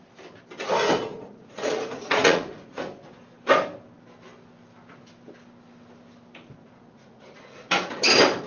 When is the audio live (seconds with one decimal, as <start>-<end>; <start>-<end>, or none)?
0.0-1.1; 3.1-6.6; 7.9-8.5